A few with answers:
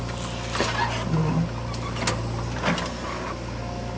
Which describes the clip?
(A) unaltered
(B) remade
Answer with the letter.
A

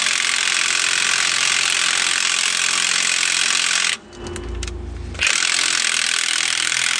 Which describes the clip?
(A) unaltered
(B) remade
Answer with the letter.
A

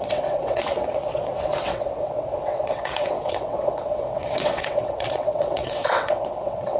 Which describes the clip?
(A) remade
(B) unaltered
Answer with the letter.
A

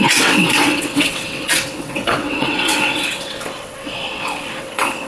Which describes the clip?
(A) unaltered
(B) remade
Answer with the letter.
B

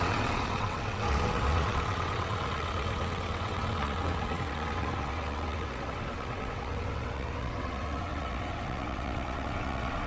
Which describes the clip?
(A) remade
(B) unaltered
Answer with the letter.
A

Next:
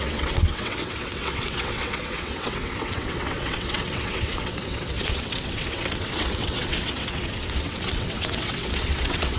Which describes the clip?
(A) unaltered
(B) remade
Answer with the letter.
B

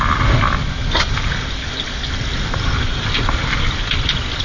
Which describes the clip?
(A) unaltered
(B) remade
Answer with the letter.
A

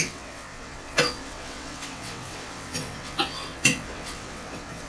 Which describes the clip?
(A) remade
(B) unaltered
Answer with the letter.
A